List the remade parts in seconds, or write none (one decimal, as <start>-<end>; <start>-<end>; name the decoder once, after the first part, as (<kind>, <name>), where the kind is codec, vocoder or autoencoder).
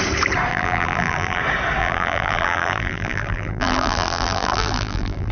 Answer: 0.5-1.4 (vocoder, BigVGAN v2); 1.8-5.3